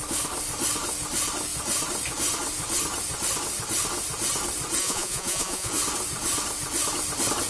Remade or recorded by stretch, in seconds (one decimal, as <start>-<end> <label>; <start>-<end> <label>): 0.0-4.8 recorded; 4.8-5.7 remade; 5.7-7.5 recorded